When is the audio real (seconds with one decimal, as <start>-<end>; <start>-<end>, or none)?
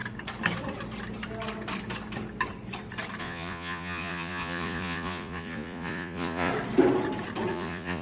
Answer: 0.0-3.2; 6.5-7.5